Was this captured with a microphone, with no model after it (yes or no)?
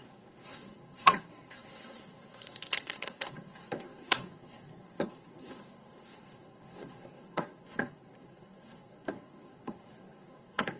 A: no